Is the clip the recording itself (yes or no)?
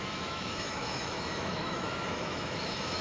no